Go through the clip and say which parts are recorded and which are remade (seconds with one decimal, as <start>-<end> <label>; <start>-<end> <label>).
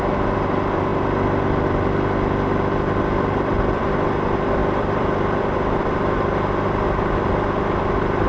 0.0-0.9 recorded; 0.9-3.8 remade; 3.8-4.6 recorded; 4.6-6.5 remade; 6.5-8.3 recorded